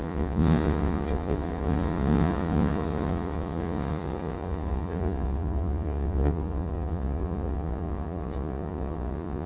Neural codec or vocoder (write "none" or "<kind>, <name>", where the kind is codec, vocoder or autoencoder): vocoder, Vocos